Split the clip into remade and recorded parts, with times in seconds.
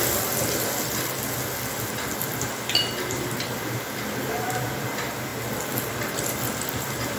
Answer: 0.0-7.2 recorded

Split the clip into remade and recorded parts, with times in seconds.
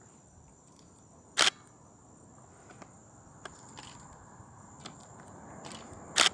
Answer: 0.0-3.0 recorded; 3.0-5.5 remade; 5.5-6.3 recorded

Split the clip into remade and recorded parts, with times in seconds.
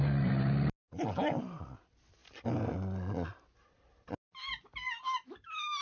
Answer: 0.0-5.8 recorded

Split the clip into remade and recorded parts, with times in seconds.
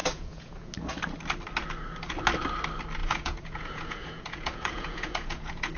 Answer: 0.0-0.7 remade; 0.7-3.0 recorded; 3.0-5.8 remade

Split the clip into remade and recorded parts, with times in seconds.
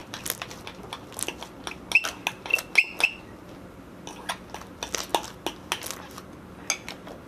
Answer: 0.0-7.3 recorded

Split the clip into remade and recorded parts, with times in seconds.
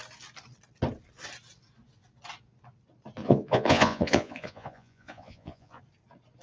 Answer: 0.0-3.2 recorded; 3.2-5.8 remade; 5.8-6.4 recorded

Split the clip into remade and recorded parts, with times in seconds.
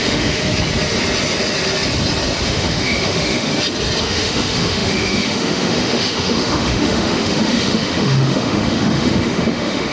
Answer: 0.0-0.4 remade; 0.4-2.4 recorded; 2.4-3.5 remade; 3.5-4.0 recorded; 4.0-9.9 remade